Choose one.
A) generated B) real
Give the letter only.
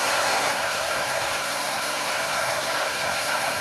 A